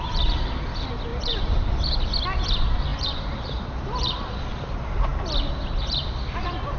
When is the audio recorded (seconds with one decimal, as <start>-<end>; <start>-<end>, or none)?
0.0-1.1; 2.0-2.9; 3.7-6.8